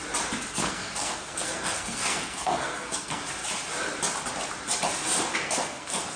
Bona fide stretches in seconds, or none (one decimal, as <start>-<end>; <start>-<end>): 0.0-0.6; 3.2-5.3